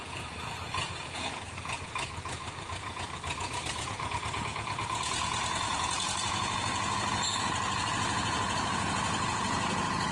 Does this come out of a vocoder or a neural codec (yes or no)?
yes